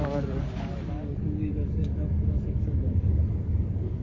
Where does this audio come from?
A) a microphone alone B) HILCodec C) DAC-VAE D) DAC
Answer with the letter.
D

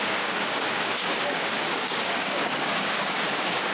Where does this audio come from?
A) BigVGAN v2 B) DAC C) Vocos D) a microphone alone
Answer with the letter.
B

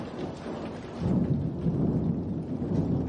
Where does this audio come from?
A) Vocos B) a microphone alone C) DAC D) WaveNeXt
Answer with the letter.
B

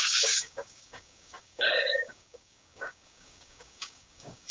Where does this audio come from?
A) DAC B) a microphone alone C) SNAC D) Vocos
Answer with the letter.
A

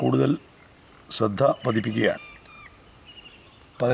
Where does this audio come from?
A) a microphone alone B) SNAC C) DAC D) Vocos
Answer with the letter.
A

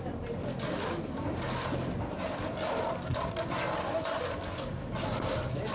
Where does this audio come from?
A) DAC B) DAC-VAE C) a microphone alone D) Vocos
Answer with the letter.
C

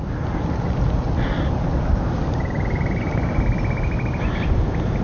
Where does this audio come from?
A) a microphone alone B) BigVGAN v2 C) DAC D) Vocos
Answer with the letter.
A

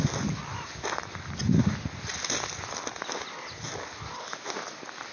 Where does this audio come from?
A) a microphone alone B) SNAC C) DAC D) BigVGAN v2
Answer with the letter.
A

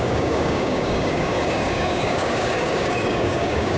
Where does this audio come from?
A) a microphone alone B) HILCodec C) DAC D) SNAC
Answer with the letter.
C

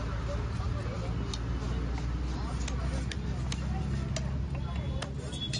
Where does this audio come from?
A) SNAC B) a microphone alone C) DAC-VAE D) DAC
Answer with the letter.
B